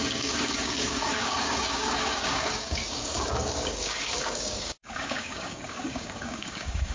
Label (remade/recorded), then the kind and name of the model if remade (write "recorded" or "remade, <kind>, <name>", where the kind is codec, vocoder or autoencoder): remade, codec, DAC